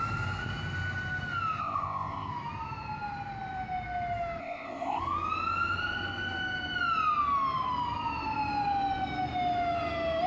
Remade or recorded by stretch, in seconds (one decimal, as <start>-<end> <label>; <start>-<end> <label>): 0.0-1.6 recorded; 1.6-2.3 remade; 2.3-4.4 recorded; 4.4-5.0 remade; 5.0-10.3 recorded